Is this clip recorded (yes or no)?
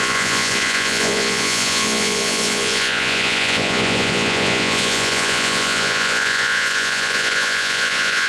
no